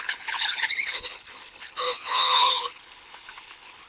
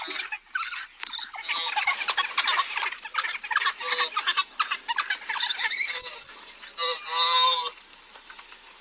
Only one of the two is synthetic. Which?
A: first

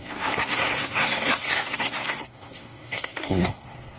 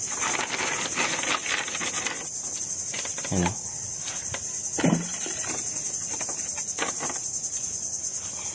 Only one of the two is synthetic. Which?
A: first